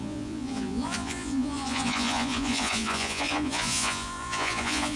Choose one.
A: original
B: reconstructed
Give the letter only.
B